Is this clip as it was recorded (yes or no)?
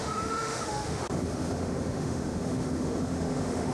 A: no